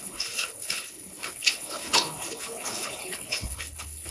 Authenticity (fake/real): fake